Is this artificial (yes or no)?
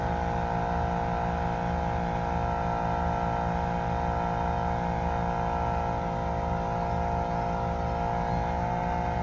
no